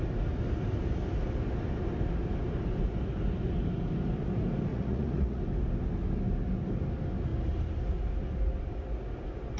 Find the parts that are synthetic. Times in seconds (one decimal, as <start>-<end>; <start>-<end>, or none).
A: 4.7-5.4